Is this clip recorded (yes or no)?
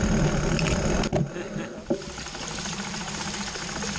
yes